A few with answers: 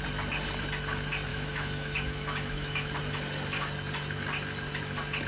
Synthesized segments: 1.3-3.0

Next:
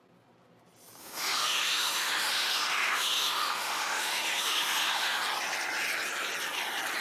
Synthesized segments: 1.0-5.2